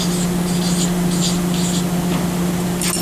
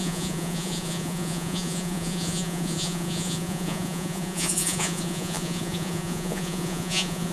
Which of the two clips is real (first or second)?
first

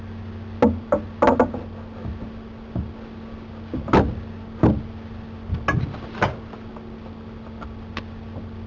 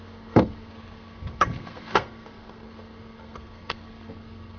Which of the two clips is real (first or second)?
first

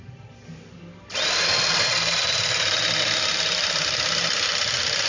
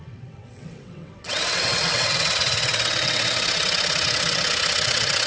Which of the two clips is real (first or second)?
first